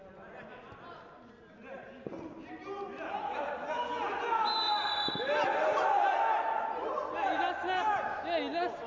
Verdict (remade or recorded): recorded